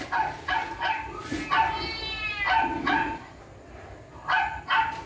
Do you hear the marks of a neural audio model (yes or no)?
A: no